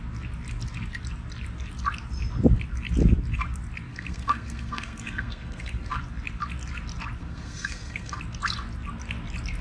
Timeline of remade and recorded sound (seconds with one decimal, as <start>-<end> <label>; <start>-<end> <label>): 0.0-3.9 recorded; 3.9-6.0 remade; 6.0-7.2 recorded; 7.2-8.2 remade; 8.2-9.6 recorded